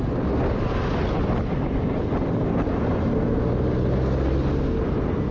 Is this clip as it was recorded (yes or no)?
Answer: yes